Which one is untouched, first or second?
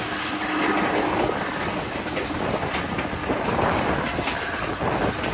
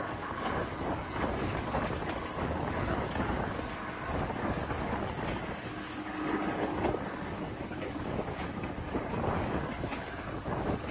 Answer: first